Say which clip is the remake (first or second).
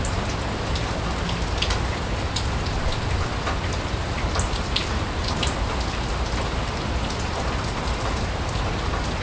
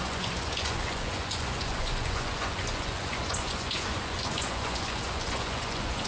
second